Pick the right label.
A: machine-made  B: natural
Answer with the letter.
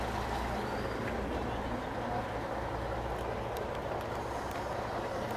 B